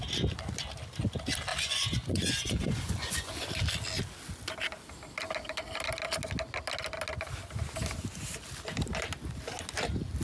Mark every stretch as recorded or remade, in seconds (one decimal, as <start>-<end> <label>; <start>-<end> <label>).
0.0-1.5 recorded; 1.5-3.4 remade; 3.4-10.2 recorded